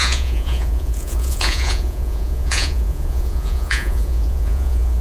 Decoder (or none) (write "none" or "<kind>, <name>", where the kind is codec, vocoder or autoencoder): vocoder, Vocos